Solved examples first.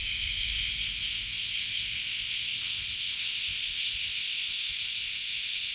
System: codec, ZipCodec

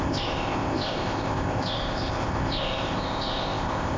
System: codec, ZipCodec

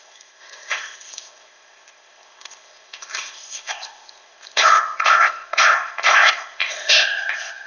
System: codec, ZipCodec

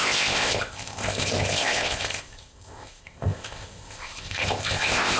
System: codec, ZipCodec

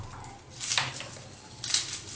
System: none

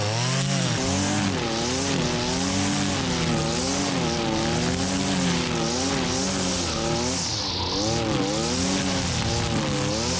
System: none